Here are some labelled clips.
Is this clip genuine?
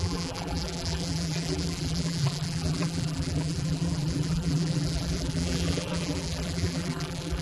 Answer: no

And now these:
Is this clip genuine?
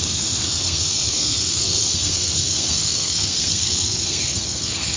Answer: no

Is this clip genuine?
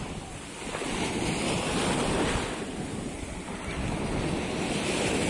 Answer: yes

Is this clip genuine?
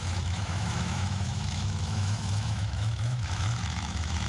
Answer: no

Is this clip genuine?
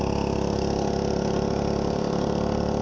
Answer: yes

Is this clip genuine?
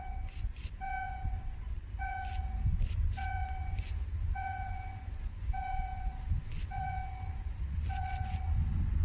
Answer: no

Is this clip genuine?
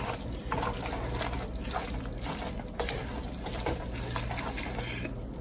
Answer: yes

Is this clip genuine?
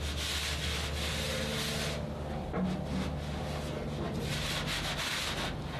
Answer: yes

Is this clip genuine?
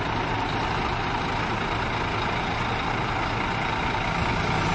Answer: yes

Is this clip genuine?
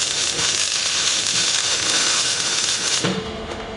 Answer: no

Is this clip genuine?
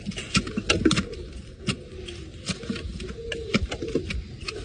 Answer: yes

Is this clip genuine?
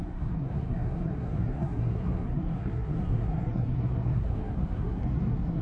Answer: no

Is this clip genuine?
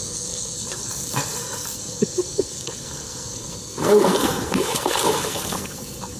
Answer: no